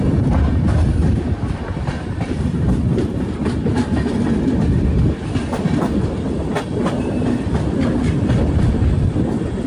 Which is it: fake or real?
fake